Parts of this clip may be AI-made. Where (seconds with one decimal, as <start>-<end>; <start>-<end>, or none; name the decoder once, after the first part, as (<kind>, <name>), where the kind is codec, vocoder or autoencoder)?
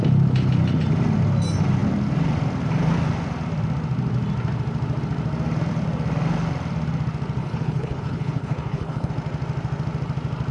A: 7.4-9.1 (codec, HILCodec)